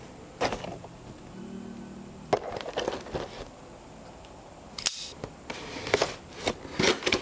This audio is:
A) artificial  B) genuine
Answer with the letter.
B